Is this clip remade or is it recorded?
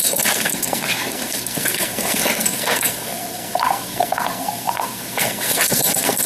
remade